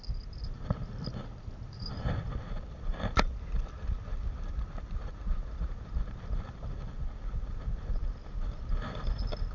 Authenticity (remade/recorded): recorded